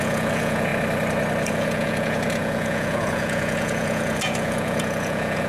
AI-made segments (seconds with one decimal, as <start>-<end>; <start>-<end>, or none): 0.0-0.7; 1.5-5.5